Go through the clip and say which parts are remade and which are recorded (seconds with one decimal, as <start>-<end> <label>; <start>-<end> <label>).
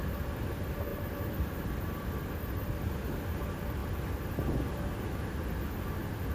0.0-0.9 recorded; 0.9-2.9 remade; 2.9-6.3 recorded